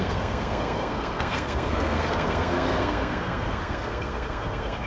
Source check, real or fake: fake